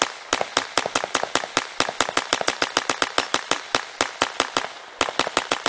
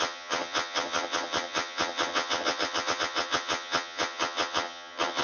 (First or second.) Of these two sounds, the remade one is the second